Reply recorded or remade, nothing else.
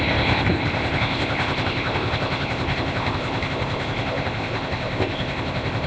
remade